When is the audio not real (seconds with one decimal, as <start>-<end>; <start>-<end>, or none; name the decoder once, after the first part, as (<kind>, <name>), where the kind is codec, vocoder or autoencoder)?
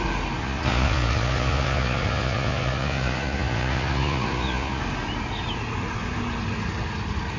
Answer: 0.4-4.8 (vocoder, Vocos)